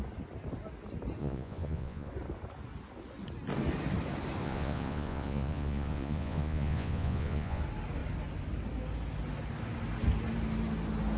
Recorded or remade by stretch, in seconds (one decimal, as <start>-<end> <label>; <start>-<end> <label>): 0.0-1.2 recorded; 1.2-2.1 remade; 2.1-4.4 recorded; 4.4-7.6 remade; 7.6-11.2 recorded